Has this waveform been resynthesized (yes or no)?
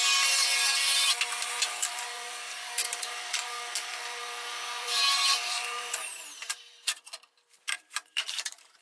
yes